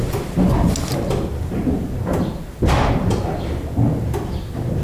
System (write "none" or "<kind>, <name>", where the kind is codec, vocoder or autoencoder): none